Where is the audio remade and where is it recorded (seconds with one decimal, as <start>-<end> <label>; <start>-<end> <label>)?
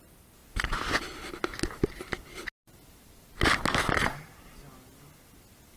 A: 0.0-5.8 recorded